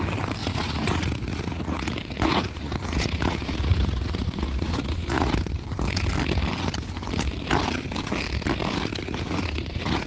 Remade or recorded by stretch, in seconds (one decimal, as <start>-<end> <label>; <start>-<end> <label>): 0.0-0.4 recorded; 0.4-5.3 remade; 5.3-9.0 recorded; 9.0-10.1 remade